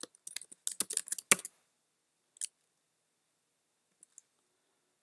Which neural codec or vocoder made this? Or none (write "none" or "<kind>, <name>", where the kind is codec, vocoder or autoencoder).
none